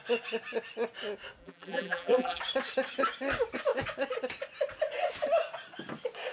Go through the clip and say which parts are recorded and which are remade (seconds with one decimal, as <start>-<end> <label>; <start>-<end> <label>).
0.0-1.4 recorded; 1.4-2.4 remade; 2.4-6.3 recorded